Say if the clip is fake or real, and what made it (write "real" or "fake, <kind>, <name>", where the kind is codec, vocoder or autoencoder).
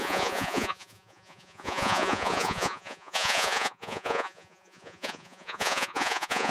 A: fake, vocoder, Vocos